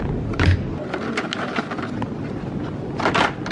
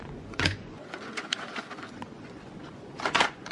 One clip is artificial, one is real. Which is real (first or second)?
first